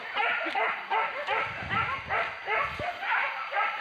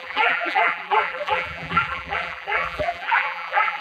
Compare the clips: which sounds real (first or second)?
first